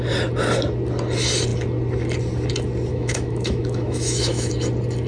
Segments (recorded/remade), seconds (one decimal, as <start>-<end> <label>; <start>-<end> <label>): 0.0-2.9 recorded; 2.9-4.5 remade; 4.5-5.1 recorded